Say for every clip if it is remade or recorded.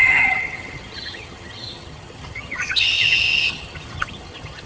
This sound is remade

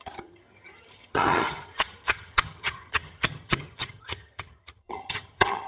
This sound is remade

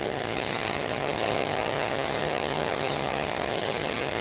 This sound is remade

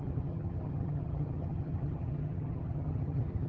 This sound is remade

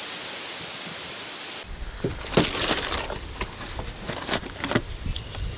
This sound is recorded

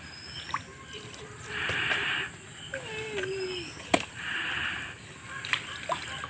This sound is recorded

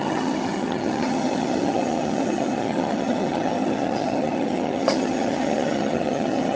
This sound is remade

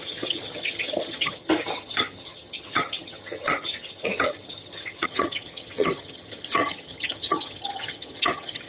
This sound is remade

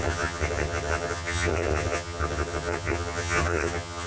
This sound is remade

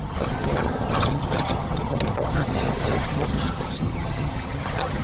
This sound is remade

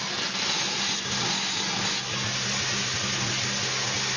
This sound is recorded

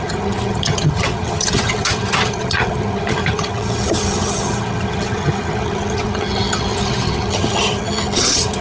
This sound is remade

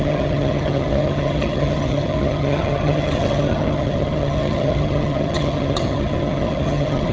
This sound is remade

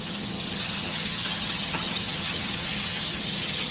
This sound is remade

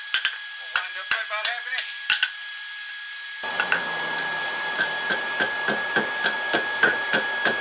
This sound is recorded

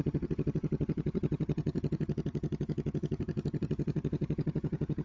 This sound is remade